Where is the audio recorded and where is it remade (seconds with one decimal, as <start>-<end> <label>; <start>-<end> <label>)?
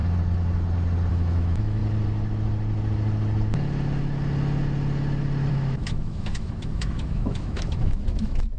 0.0-1.1 recorded; 1.1-1.8 remade; 1.8-5.5 recorded; 5.5-8.6 remade